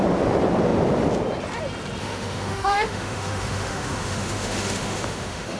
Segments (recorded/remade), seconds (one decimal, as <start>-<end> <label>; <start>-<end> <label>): 0.0-2.0 recorded; 2.0-5.6 remade